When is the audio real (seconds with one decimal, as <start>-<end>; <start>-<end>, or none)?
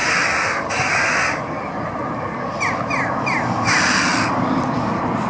0.0-5.3